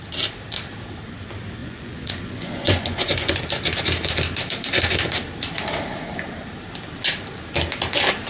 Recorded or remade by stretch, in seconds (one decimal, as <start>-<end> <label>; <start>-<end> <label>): 0.0-1.6 recorded; 1.6-3.4 remade; 3.4-8.3 recorded